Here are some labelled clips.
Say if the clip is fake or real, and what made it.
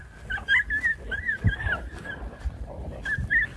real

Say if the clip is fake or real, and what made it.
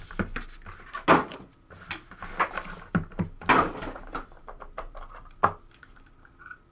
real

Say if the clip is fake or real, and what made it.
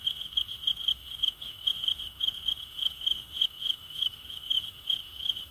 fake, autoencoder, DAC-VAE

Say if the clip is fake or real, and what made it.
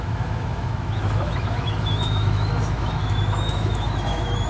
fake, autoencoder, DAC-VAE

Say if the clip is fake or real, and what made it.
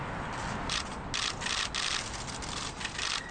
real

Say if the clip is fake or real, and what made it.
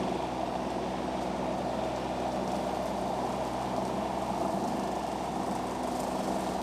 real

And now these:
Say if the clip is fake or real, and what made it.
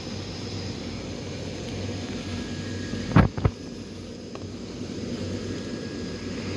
real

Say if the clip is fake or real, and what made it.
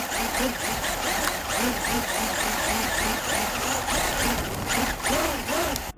real